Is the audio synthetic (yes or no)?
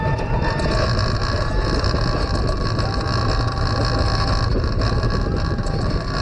no